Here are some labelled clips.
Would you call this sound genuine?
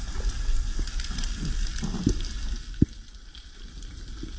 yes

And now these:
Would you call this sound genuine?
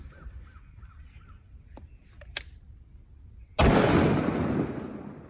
yes